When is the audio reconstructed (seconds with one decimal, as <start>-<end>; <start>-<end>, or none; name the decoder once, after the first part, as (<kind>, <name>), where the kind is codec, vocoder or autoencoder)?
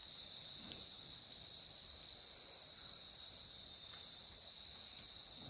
0.5-0.9 (vocoder, Vocos); 4.2-5.5